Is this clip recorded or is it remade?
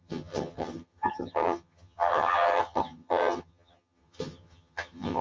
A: remade